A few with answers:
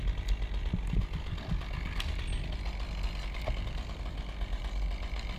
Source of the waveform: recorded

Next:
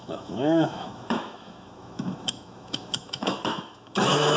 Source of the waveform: remade